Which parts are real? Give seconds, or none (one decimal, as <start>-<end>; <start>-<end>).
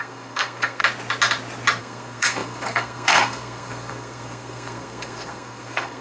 0.8-1.8